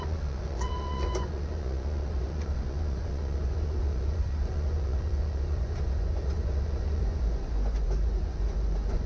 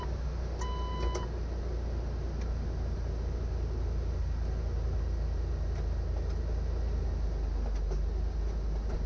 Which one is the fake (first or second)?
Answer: first